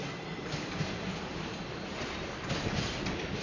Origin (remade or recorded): recorded